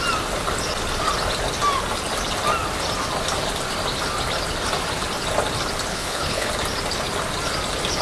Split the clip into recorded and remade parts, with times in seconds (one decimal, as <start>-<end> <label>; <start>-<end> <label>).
0.0-5.9 recorded; 5.9-6.5 remade; 6.5-8.0 recorded